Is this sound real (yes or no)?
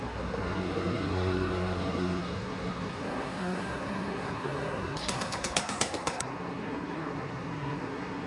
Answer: no